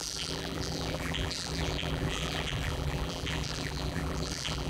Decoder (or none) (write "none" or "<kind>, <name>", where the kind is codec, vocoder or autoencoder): vocoder, BigVGAN v2